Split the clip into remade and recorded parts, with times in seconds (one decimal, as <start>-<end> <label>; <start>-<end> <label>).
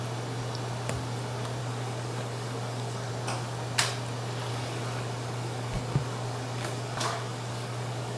0.0-1.6 recorded; 1.6-3.1 remade; 3.1-4.5 recorded; 4.5-8.2 remade